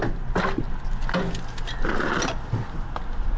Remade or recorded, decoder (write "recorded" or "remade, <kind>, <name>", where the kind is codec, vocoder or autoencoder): recorded